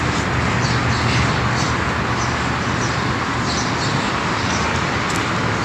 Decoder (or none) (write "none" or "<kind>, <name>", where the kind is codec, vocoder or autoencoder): none